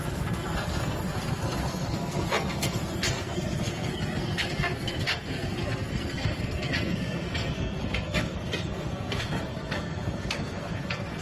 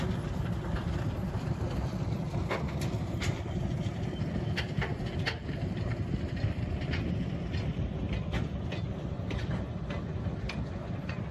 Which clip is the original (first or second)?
second